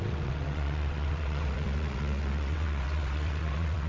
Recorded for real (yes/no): no